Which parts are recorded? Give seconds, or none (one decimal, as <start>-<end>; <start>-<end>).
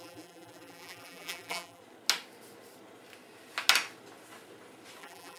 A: 1.8-5.0